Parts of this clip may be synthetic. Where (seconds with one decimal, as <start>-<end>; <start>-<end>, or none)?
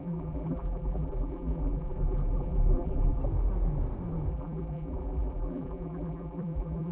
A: 0.0-3.2; 4.3-6.9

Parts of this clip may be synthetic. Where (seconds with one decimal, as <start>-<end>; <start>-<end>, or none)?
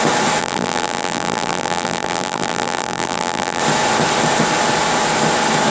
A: 0.4-3.6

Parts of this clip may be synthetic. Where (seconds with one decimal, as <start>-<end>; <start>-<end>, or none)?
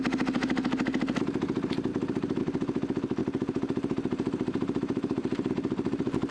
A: 1.9-2.4; 3.2-5.5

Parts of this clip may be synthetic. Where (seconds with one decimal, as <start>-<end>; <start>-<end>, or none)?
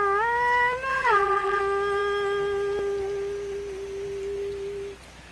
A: 0.9-1.6